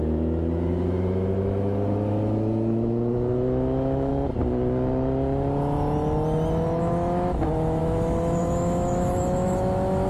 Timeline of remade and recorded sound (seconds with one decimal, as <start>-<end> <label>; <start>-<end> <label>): 0.0-4.1 remade; 4.1-6.8 recorded; 6.8-10.1 remade